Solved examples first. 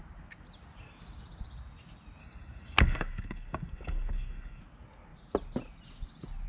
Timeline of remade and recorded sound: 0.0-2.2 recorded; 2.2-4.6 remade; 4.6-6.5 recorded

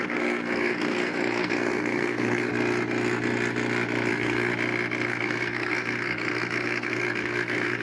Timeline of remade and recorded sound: 0.0-2.5 remade; 2.5-4.1 recorded; 4.1-4.5 remade; 4.5-5.1 recorded; 5.1-7.8 remade